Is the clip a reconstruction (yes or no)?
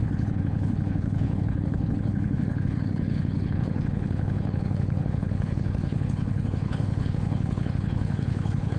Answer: yes